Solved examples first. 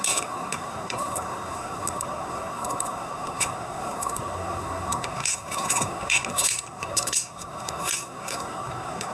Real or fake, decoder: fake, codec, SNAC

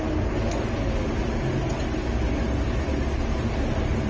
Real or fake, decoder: real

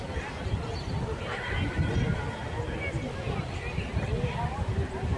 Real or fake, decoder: real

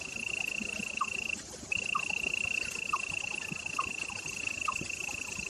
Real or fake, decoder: real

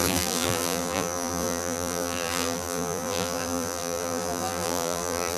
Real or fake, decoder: fake, vocoder, BigVGAN v2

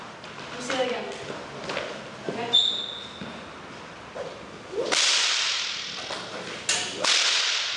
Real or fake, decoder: real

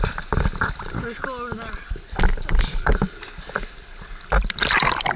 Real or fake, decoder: real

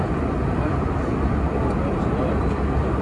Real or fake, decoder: real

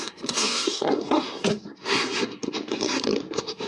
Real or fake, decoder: fake, codec, SNAC